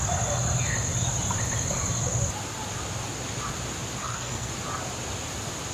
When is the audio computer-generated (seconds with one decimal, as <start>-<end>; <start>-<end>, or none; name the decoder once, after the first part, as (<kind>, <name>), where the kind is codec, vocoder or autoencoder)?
4.0-4.5 (codec, SNAC)